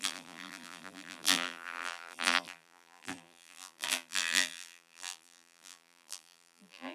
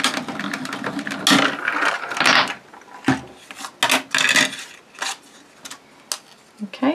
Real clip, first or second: second